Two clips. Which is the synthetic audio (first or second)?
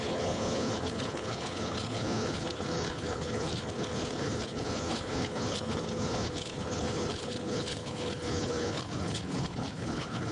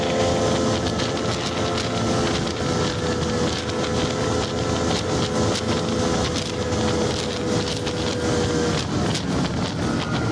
first